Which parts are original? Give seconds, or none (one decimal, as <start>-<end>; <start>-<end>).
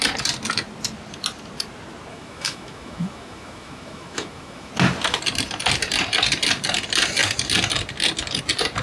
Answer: 0.0-2.1; 4.7-8.8